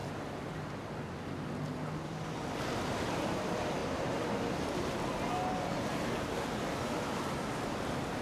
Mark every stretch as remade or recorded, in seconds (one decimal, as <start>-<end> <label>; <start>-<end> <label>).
0.0-8.2 recorded